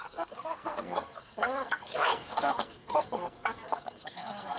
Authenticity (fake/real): fake